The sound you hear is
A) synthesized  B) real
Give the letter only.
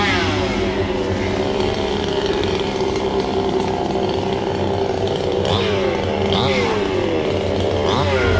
B